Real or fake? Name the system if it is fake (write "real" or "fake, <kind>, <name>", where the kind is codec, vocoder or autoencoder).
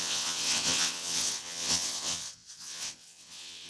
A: fake, vocoder, WaveNeXt